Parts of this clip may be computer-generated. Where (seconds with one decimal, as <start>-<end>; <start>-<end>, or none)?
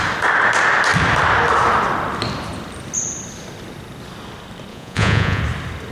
4.7-5.4